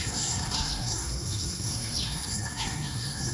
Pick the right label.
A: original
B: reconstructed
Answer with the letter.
B